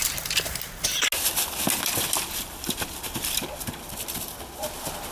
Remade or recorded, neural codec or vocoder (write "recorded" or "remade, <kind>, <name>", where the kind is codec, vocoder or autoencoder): recorded